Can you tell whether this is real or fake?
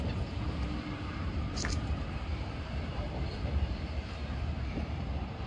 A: fake